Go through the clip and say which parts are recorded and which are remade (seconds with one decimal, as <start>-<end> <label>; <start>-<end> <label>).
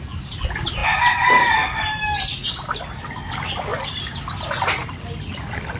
0.0-5.8 recorded